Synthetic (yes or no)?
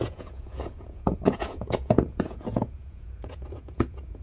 yes